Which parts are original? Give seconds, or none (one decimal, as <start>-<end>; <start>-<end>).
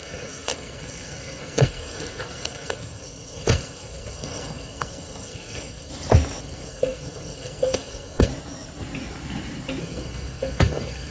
5.9-6.4; 8.3-9.8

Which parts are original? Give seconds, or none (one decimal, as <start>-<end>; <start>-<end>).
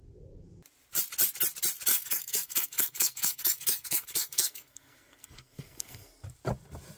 0.0-1.9; 6.1-7.0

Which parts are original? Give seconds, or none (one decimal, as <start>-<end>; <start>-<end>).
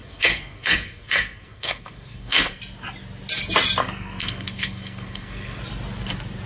2.6-3.8; 5.6-6.5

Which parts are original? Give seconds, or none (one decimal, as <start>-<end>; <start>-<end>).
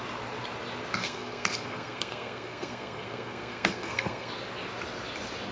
0.0-1.0; 4.3-5.5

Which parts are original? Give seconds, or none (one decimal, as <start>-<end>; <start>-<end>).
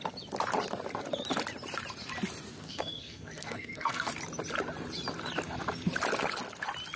0.0-2.5; 4.1-7.0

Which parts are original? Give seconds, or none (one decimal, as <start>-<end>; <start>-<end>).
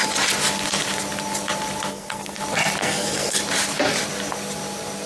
0.0-1.9; 2.4-2.8; 3.4-5.1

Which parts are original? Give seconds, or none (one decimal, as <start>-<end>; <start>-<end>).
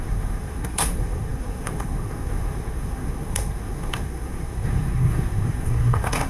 none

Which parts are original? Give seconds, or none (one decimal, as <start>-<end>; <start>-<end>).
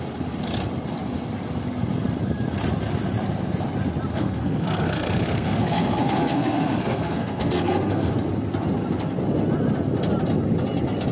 0.0-4.1; 8.1-11.1